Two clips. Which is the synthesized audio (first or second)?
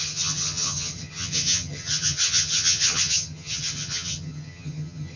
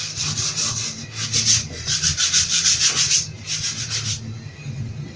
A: first